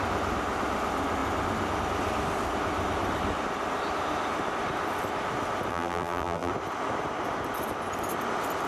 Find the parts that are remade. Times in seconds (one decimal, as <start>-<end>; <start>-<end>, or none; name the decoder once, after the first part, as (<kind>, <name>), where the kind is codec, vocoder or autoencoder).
5.7-6.5 (vocoder, BigVGAN v2)